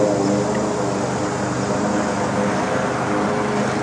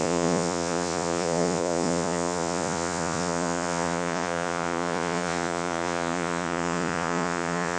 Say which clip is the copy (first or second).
second